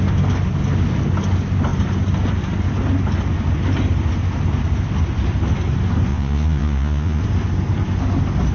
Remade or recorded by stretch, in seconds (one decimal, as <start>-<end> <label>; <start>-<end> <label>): 0.0-6.1 recorded; 6.1-7.2 remade; 7.2-8.5 recorded